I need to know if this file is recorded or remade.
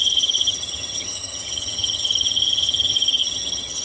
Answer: remade